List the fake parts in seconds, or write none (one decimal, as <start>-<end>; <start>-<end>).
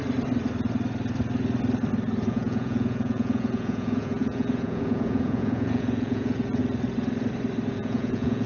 2.3-6.6; 7.7-8.5